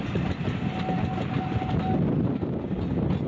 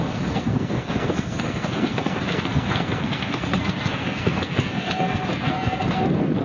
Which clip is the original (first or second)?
first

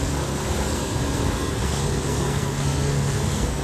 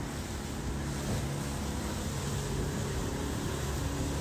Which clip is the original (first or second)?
second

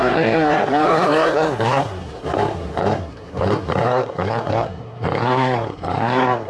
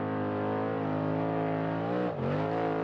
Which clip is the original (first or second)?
second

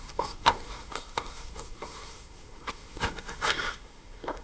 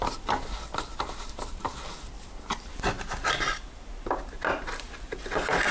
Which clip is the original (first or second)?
second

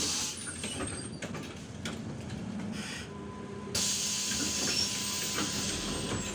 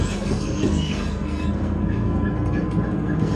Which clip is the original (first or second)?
first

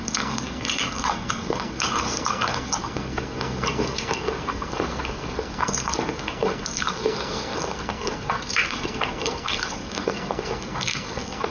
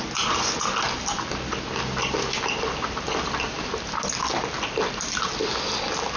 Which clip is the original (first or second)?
second